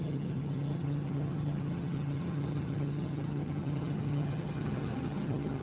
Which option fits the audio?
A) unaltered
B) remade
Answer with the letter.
B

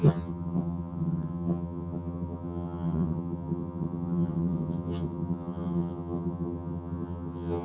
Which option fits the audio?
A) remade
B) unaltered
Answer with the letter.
A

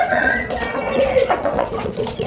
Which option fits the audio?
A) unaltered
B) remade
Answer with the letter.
B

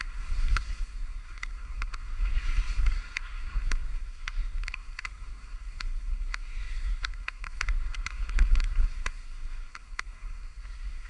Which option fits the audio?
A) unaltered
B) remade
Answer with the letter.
B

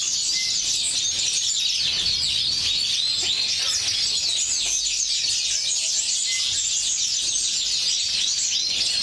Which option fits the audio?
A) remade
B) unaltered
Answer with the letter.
B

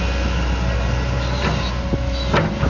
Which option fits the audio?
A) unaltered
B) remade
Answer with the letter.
A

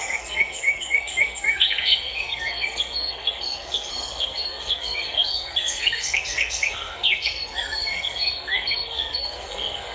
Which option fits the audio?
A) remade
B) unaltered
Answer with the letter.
A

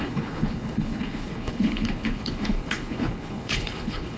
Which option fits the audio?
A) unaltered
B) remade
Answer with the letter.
B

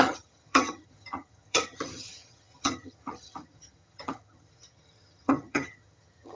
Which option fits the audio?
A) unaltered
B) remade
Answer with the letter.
B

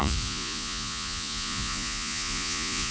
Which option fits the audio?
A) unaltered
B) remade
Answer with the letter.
B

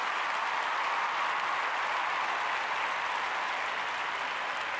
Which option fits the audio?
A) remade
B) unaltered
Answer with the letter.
B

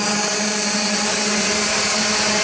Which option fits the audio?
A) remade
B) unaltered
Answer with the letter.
B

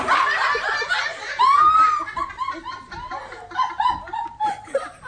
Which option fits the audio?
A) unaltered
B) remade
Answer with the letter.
A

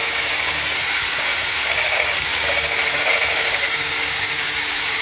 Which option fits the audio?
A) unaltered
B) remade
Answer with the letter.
B